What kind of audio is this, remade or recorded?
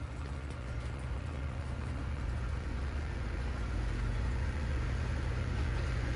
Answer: remade